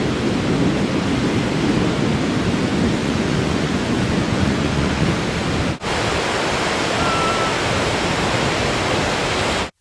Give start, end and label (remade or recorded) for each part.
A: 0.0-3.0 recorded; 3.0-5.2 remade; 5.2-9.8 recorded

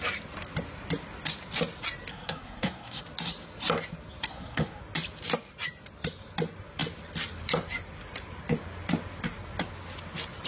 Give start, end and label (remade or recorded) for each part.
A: 0.0-2.1 recorded; 2.1-3.0 remade; 3.0-4.3 recorded; 4.3-4.8 remade; 4.8-10.5 recorded

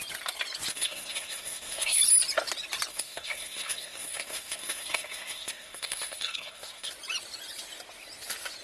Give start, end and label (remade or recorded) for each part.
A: 0.0-0.7 recorded; 0.7-2.0 remade; 2.0-2.9 recorded; 2.9-6.9 remade; 6.9-8.6 recorded

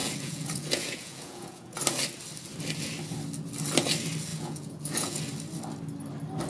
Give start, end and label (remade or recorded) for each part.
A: 0.0-1.8 remade; 1.8-4.3 recorded; 4.3-5.2 remade; 5.2-6.5 recorded

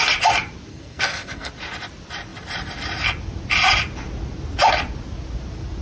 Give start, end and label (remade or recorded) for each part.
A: 0.0-0.7 recorded; 0.7-1.5 remade; 1.5-5.8 recorded